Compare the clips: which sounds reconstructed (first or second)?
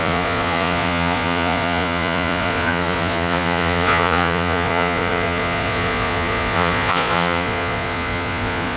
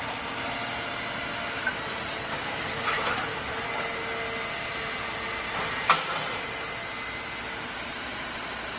first